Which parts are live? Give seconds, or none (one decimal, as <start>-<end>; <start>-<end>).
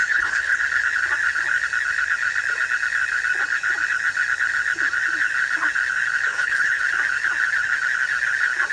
0.6-6.3; 6.8-8.7